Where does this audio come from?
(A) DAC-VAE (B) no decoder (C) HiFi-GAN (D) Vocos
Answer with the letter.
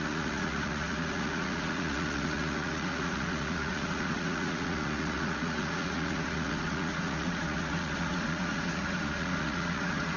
D